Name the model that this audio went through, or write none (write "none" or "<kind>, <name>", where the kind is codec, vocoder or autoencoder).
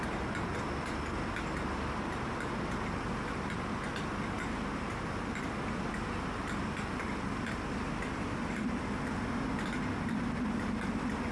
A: none